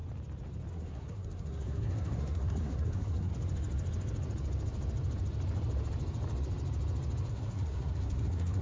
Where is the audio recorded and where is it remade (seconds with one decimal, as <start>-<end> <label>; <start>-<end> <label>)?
0.0-0.7 recorded; 0.7-3.3 remade; 3.3-7.3 recorded; 7.3-8.6 remade